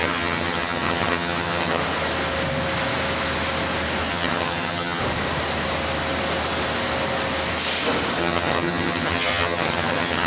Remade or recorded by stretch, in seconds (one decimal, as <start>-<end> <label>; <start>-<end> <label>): 0.0-1.8 remade; 1.8-4.1 recorded; 4.1-5.0 remade; 5.0-8.2 recorded; 8.2-10.3 remade